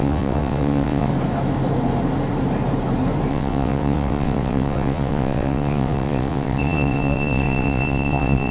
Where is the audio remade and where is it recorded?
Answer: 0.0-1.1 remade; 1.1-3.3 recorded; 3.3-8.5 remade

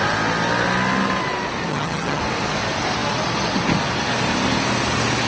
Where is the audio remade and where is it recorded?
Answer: 0.0-1.7 recorded; 1.7-2.2 remade; 2.2-5.3 recorded

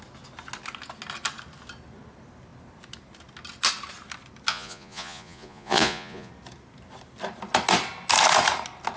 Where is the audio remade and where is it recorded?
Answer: 0.0-4.5 recorded; 4.5-6.3 remade; 6.3-9.0 recorded